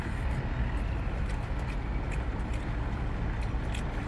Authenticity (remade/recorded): recorded